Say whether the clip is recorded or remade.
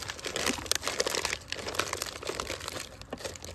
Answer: recorded